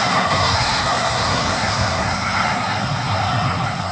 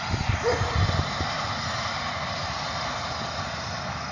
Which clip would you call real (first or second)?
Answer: second